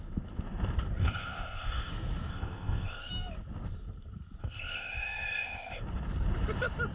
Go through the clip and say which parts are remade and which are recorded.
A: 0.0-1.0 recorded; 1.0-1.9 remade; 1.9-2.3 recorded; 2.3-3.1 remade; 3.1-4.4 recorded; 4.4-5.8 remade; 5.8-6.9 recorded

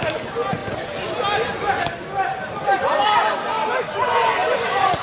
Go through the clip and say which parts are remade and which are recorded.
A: 0.0-4.4 recorded; 4.4-5.0 remade

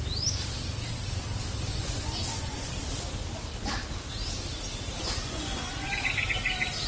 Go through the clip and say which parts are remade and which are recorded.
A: 0.0-1.7 recorded; 1.7-2.7 remade; 2.7-5.2 recorded; 5.2-5.9 remade; 5.9-6.9 recorded

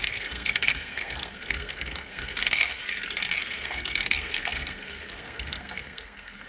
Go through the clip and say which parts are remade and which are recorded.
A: 0.0-2.8 remade; 2.8-3.4 recorded; 3.4-6.5 remade

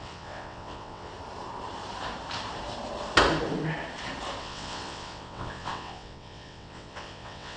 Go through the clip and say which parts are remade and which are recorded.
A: 0.0-1.1 remade; 1.1-4.4 recorded; 4.4-7.6 remade

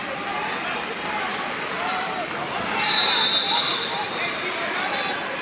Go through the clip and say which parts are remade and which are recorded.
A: 0.0-1.3 recorded; 1.3-2.0 remade; 2.0-3.4 recorded; 3.4-5.4 remade